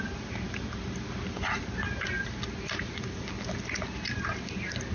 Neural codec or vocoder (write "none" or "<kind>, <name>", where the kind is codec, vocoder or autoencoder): none